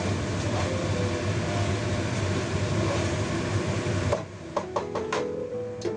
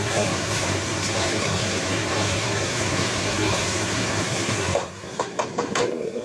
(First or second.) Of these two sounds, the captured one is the first